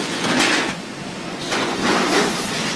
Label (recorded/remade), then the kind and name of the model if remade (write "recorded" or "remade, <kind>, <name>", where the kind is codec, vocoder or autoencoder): remade, vocoder, Vocos